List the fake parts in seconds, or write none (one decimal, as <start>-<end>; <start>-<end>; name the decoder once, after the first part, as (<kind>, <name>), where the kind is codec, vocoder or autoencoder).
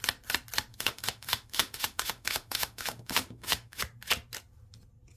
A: 0.7-3.8 (autoencoder, DAC-VAE)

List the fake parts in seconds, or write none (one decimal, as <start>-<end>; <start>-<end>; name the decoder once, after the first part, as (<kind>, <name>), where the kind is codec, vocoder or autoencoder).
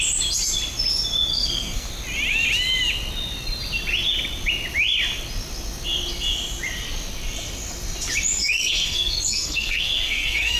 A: 1.3-1.9 (codec, SNAC); 8.4-10.6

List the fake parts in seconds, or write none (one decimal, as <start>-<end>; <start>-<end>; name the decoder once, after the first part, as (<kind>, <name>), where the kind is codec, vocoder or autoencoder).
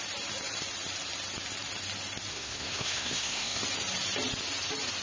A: 2.3-3.6 (codec, SNAC)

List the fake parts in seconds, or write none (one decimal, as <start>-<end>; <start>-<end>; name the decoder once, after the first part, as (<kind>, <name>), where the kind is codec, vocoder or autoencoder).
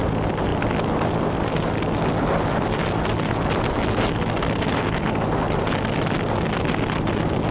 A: none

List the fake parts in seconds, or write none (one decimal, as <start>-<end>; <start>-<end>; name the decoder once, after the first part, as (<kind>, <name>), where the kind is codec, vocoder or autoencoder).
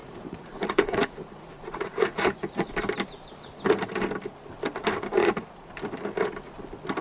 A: 0.0-2.7 (vocoder, Vocos); 5.2-5.7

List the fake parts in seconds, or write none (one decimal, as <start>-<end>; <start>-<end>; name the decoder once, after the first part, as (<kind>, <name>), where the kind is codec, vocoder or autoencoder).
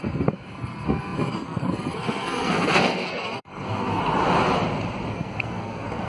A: 0.0-4.0 (codec, SNAC); 5.1-6.1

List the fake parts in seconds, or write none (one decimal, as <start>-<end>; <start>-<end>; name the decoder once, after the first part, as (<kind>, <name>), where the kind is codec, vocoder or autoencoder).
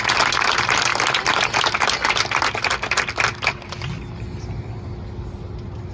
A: none